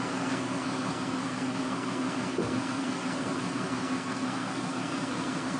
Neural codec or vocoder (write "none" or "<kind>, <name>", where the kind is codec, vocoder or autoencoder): codec, SNAC